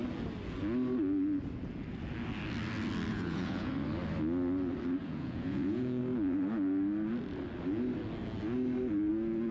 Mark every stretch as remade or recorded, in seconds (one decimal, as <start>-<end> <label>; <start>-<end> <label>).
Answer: 0.0-3.1 recorded; 3.1-3.7 remade; 3.7-5.0 recorded; 5.0-6.0 remade; 6.0-9.5 recorded